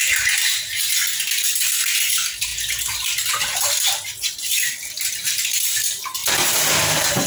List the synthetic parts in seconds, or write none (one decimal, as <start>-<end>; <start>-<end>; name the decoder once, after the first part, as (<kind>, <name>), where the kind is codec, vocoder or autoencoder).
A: 2.5-3.3 (vocoder, BigVGAN v2); 6.2-7.3

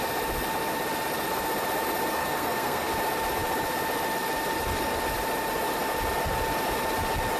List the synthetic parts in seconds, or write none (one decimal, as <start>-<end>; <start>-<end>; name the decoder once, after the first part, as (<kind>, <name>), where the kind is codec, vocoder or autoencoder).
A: 2.2-2.9 (codec, SNAC)